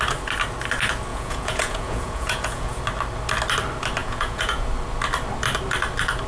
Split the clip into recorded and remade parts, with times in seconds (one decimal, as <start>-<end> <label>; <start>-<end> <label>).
0.0-1.1 recorded; 1.1-2.8 remade; 2.8-4.0 recorded; 4.0-4.7 remade; 4.7-6.3 recorded